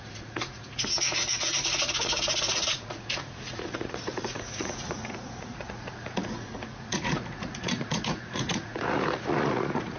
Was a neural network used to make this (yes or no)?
yes